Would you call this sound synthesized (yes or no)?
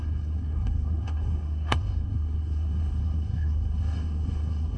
yes